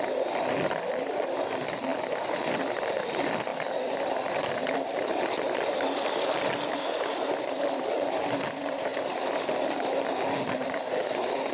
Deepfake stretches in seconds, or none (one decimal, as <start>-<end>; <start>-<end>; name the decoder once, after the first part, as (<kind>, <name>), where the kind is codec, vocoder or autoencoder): none